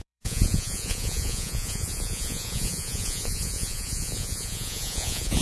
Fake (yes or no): yes